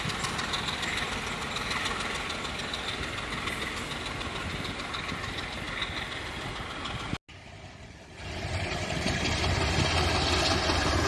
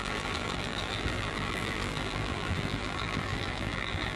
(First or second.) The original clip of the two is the first